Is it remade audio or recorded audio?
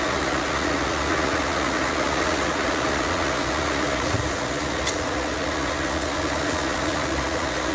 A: remade